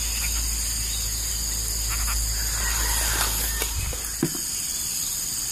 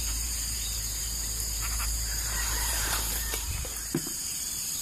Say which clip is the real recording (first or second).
first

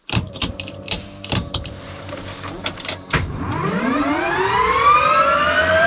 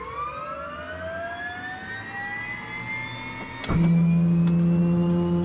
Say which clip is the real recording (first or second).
second